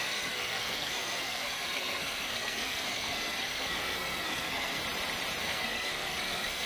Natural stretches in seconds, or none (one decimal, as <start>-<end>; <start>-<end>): 4.8-5.4